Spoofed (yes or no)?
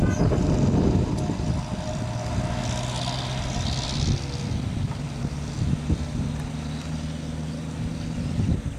no